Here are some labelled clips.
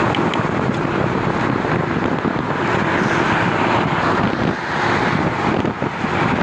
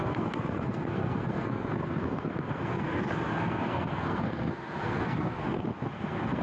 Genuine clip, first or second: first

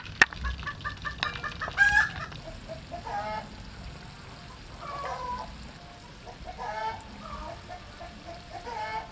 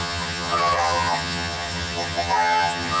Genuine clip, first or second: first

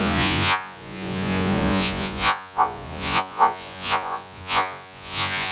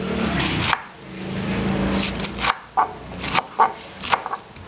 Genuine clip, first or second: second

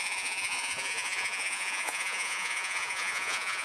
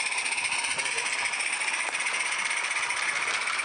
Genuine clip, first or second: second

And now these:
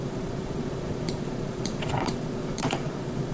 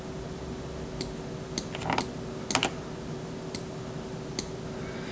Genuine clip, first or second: second